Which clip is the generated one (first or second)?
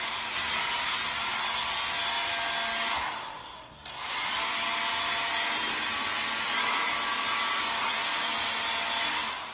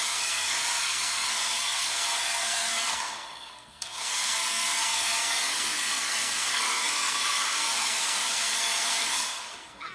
second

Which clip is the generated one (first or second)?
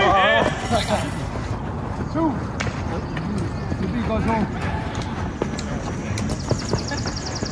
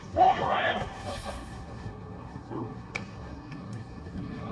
second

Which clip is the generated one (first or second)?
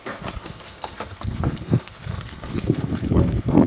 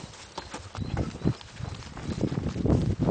first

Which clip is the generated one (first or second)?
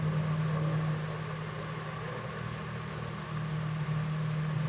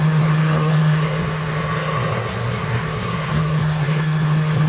second